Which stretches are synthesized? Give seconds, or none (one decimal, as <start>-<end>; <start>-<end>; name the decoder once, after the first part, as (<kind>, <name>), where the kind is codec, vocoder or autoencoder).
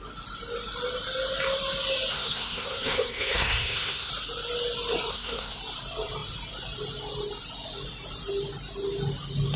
2.1-4.1 (codec, SNAC); 5.1-5.6